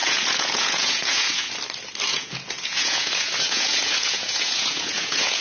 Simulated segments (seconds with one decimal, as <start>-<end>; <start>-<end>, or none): 0.0-1.5; 2.1-5.4